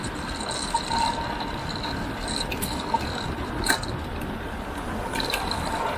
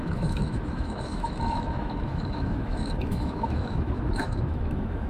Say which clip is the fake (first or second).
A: second